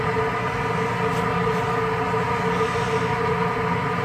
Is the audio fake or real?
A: real